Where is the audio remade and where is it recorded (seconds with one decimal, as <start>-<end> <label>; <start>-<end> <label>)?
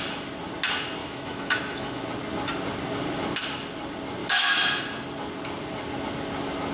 0.0-1.0 recorded; 1.0-2.0 remade; 2.0-4.2 recorded; 4.2-4.8 remade; 4.8-6.7 recorded